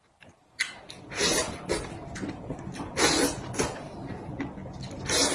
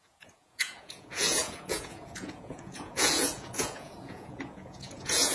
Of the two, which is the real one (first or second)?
first